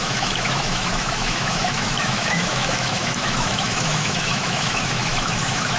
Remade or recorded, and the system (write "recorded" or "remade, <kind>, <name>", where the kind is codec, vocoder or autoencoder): remade, autoencoder, DAC-VAE